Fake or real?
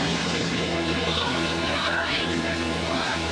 fake